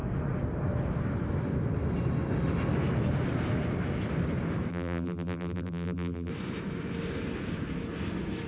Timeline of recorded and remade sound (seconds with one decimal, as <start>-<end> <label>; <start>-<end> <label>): 0.0-4.7 recorded; 4.7-6.3 remade; 6.3-8.5 recorded